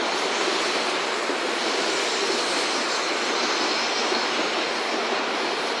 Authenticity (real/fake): real